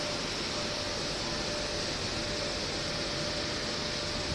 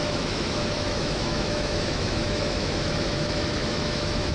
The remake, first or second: second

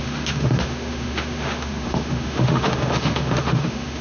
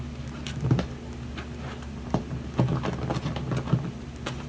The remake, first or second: first